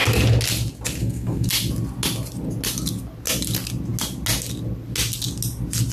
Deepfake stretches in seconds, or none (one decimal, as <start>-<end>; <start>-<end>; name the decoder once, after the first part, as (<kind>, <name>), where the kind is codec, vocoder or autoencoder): 1.0-1.5 (codec, SNAC)